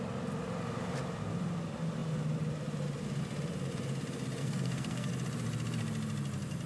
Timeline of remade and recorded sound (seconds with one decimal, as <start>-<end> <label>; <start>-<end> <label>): 0.0-4.4 recorded; 4.4-5.1 remade; 5.1-6.7 recorded